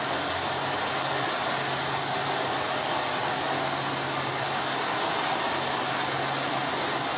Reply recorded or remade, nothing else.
recorded